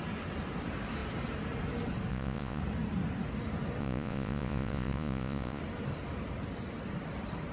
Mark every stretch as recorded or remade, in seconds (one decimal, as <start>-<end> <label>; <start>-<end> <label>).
0.0-2.1 recorded; 2.1-2.6 remade; 2.6-3.8 recorded; 3.8-5.6 remade; 5.6-7.5 recorded